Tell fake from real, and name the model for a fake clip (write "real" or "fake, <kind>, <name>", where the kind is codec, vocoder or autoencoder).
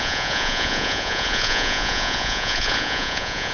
fake, vocoder, Vocos